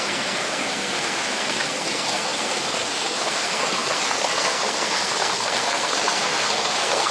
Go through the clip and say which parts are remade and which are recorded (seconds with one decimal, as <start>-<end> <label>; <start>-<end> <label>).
0.0-7.1 remade